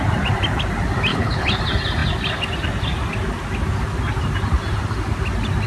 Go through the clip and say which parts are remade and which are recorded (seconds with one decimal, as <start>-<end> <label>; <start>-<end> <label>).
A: 0.0-1.1 recorded; 1.1-1.6 remade; 1.6-5.7 recorded